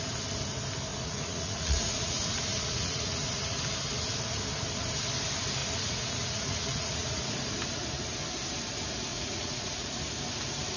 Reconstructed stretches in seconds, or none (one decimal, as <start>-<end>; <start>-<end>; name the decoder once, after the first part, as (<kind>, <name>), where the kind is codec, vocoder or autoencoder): 0.9-3.6 (vocoder, Vocos); 5.6-7.3; 9.1-9.9